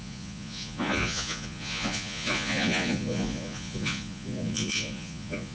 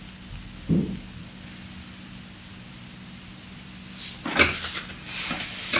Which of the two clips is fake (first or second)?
first